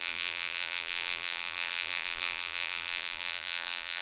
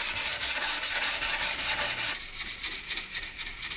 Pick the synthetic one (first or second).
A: first